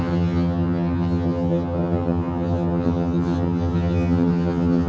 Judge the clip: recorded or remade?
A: remade